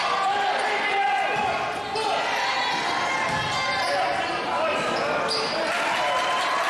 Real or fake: real